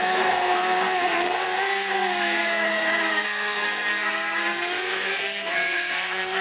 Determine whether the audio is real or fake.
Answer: fake